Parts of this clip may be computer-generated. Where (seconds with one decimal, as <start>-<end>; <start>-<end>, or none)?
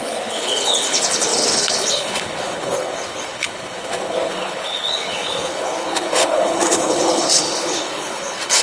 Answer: 0.0-8.6